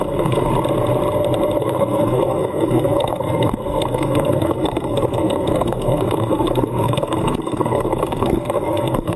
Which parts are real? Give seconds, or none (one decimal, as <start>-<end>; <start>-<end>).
0.5-1.6